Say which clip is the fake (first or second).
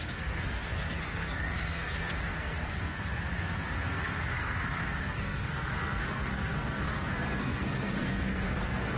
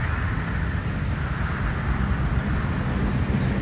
first